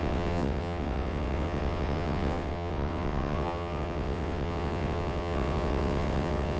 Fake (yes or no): yes